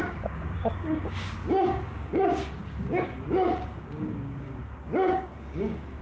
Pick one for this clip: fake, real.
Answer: fake